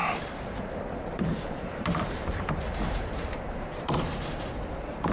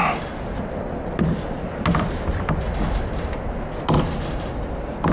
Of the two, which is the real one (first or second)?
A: second